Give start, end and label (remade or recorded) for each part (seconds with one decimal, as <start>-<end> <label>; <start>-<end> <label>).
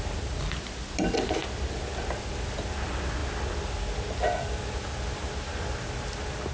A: 0.0-6.5 recorded